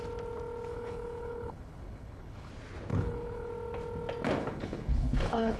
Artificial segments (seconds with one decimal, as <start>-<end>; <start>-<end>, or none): 0.7-2.5; 2.9-3.5; 4.4-5.6